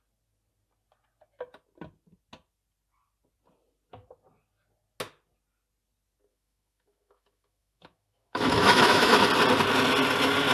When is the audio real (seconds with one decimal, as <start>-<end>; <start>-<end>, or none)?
0.0-6.3; 9.2-10.5